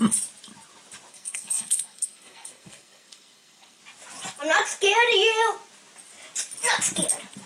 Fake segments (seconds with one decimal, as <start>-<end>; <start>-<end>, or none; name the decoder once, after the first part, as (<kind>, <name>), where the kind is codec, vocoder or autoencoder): 1.1-3.8 (codec, SNAC)

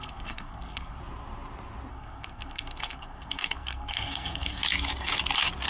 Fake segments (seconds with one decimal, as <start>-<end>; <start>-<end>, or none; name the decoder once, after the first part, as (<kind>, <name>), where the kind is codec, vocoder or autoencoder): 0.0-1.0 (codec, SNAC); 1.9-4.6

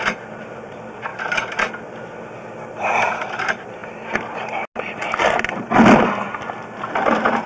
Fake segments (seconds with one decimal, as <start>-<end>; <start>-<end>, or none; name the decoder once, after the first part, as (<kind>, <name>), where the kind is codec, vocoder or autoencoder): none